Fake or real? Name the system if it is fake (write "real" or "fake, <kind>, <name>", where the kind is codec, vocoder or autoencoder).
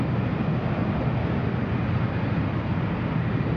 real